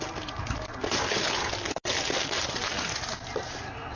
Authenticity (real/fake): real